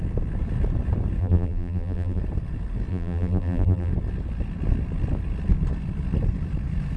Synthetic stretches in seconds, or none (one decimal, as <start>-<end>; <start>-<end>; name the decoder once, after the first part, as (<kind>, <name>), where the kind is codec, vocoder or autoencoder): 1.2-2.2 (vocoder, BigVGAN v2); 2.9-3.9